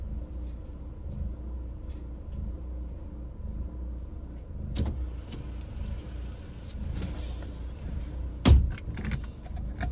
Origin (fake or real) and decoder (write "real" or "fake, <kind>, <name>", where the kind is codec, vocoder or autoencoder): real